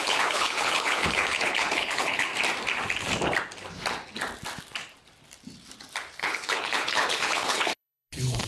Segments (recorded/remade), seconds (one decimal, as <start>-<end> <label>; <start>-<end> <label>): 0.0-2.3 remade; 2.3-6.2 recorded; 6.2-8.5 remade